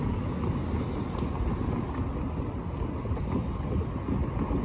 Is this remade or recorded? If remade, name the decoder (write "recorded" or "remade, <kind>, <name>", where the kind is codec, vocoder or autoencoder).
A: recorded